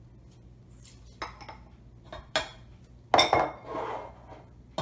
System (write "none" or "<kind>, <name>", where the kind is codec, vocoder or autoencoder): none